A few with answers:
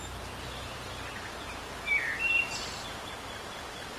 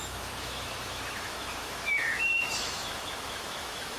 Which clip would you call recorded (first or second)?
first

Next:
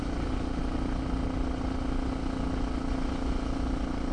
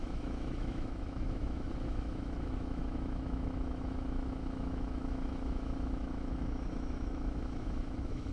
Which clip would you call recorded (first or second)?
first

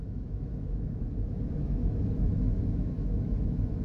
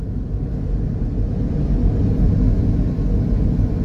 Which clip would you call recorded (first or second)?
second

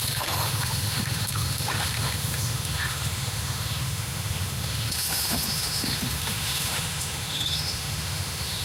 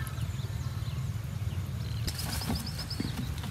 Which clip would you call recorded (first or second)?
second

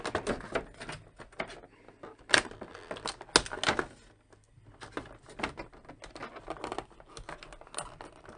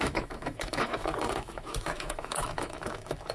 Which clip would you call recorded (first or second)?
first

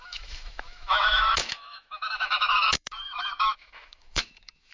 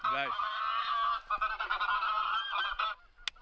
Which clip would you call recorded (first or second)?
second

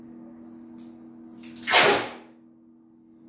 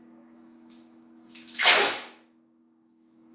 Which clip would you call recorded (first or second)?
first